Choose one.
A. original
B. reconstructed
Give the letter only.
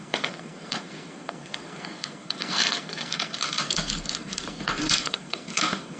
B